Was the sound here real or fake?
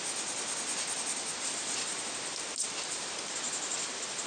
real